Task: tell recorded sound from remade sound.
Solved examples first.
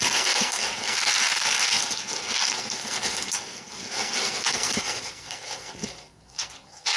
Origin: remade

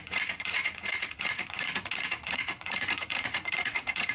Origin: remade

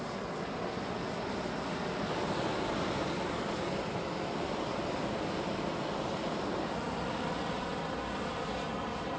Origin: recorded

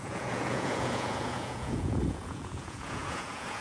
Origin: remade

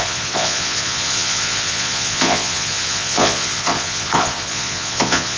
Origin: remade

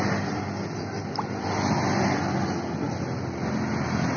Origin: recorded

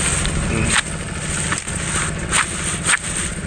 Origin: recorded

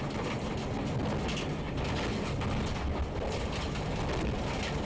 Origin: recorded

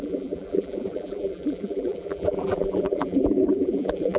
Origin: remade